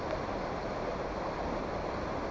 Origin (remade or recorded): recorded